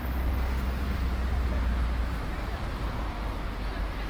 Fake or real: real